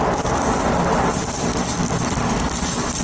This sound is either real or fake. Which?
real